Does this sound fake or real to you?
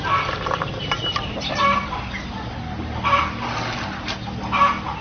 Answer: fake